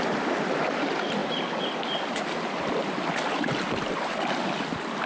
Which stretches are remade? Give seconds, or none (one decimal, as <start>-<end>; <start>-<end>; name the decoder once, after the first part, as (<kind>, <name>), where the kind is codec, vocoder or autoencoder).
none